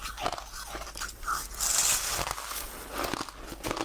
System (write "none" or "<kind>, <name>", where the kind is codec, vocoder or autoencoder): none